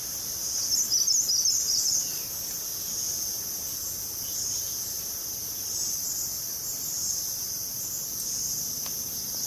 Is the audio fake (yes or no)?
no